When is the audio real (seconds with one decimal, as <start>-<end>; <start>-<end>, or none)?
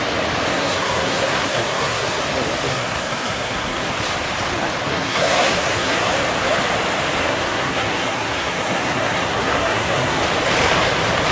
0.0-0.5; 2.2-2.7; 3.9-4.8; 6.1-7.2; 10.2-11.3